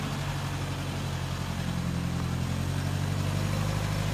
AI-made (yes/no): no